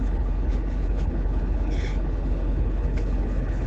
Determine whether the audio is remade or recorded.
remade